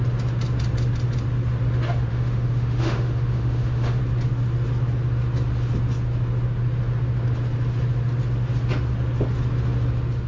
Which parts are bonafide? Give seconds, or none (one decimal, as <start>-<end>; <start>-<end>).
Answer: 0.0-2.1; 4.0-10.3